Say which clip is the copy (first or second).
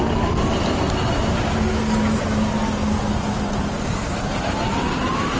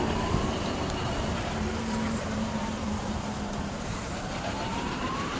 second